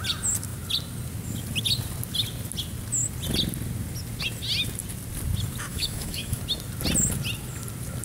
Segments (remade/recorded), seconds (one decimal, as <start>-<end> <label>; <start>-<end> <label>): 0.0-5.7 recorded; 5.7-6.4 remade; 6.4-8.0 recorded